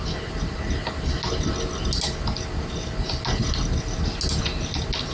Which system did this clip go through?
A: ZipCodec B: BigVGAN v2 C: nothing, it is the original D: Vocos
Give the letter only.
C